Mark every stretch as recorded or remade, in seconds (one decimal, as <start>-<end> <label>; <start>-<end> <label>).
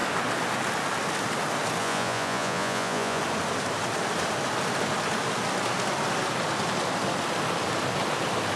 0.0-1.8 recorded; 1.8-3.2 remade; 3.2-8.6 recorded